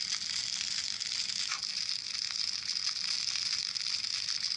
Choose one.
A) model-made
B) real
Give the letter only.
B